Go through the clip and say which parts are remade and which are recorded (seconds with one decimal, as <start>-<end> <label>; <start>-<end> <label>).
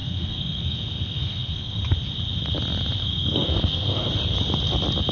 0.0-1.8 remade; 1.8-3.0 recorded; 3.0-4.1 remade; 4.1-5.1 recorded